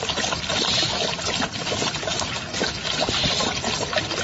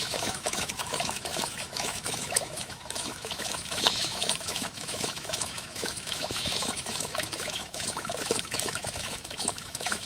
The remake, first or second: second